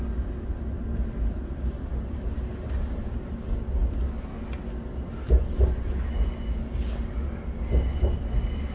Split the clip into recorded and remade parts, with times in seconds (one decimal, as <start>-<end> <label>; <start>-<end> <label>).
0.0-8.7 recorded